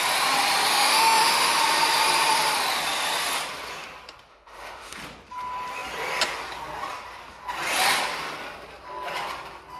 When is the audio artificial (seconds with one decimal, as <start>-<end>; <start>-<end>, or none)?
0.7-1.6; 4.3-5.0